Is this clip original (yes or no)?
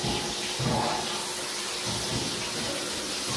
yes